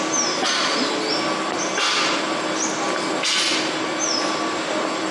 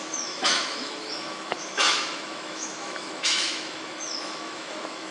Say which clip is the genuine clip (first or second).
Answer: first